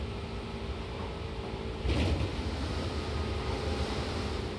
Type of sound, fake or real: real